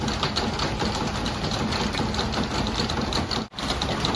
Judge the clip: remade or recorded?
recorded